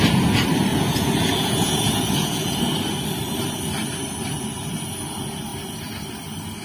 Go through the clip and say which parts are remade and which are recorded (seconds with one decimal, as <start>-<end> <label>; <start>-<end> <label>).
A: 0.0-0.7 recorded; 0.7-2.6 remade; 2.6-6.6 recorded